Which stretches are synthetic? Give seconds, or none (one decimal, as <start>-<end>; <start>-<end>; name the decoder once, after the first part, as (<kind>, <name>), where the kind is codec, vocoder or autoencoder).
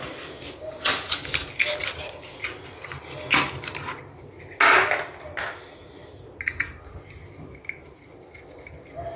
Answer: none